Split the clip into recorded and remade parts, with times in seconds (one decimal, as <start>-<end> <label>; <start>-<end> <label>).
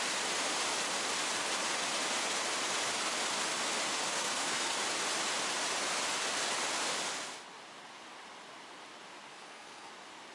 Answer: 0.0-4.1 recorded; 4.1-4.7 remade; 4.7-9.3 recorded; 9.3-9.9 remade; 9.9-10.3 recorded